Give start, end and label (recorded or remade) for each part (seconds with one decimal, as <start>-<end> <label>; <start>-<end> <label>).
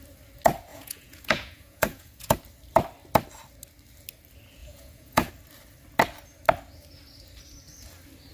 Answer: 0.0-0.7 recorded; 0.7-2.3 remade; 2.3-4.6 recorded; 4.6-5.3 remade; 5.3-8.3 recorded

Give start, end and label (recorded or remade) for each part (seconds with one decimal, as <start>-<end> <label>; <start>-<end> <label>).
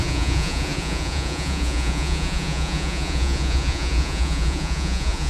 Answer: 0.0-5.3 remade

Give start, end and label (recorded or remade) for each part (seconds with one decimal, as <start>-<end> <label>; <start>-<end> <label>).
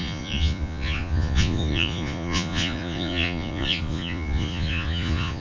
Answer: 0.0-5.4 remade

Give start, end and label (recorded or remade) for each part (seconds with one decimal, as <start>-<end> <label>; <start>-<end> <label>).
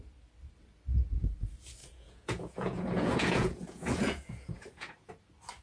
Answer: 0.0-1.8 recorded; 1.8-5.1 remade; 5.1-5.6 recorded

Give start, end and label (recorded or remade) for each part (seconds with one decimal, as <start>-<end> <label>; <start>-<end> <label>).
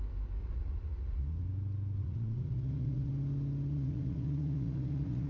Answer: 0.0-0.4 recorded; 0.4-1.2 remade; 1.2-2.0 recorded; 2.0-3.1 remade; 3.1-3.7 recorded; 3.7-5.3 remade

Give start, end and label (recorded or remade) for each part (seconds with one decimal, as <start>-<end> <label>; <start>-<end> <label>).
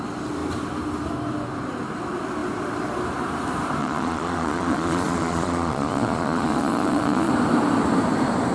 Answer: 0.0-3.8 recorded; 3.8-7.3 remade; 7.3-8.5 recorded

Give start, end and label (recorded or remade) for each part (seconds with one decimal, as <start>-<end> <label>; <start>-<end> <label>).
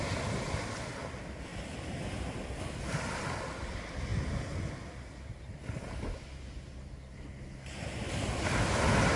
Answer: 0.0-9.2 recorded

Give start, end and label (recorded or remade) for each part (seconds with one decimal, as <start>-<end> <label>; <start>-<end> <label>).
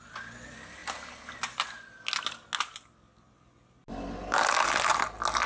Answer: 0.0-5.5 recorded